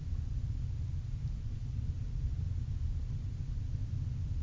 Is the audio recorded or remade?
recorded